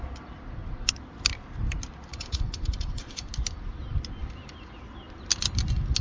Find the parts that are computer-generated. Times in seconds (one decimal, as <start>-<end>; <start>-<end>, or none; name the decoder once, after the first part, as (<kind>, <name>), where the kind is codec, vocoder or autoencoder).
2.1-3.3 (vocoder, Vocos)